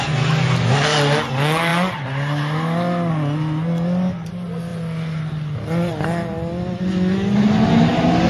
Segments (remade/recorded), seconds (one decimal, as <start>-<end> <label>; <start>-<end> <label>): 0.0-8.3 recorded